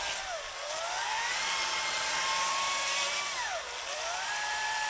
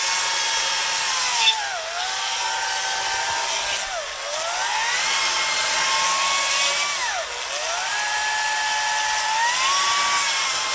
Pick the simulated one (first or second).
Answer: first